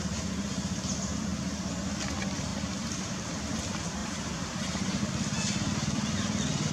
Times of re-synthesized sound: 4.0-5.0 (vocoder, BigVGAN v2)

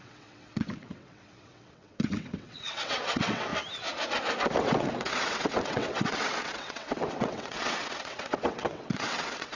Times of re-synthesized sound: 0.0-3.5 (vocoder, WaveNeXt); 4.6-9.6

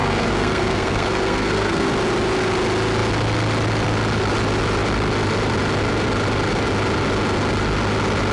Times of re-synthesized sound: 0.0-1.9 (codec, SNAC)

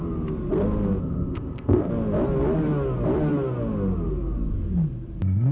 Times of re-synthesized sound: 1.0-1.9 (codec, ZipCodec)